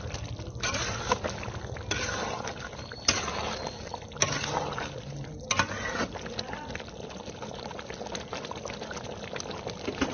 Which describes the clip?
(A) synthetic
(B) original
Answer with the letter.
B